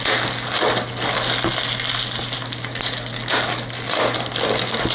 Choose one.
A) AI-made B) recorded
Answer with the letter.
B